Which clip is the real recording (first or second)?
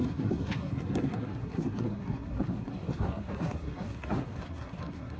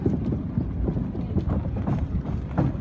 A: second